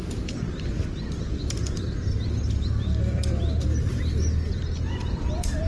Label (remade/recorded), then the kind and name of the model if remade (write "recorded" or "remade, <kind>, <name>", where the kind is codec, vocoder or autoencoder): remade, vocoder, BigVGAN v2